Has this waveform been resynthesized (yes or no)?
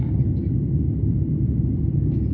no